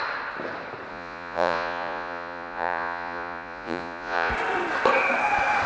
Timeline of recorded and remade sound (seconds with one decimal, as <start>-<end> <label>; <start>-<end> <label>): 0.0-0.9 recorded; 0.9-4.3 remade; 4.3-5.7 recorded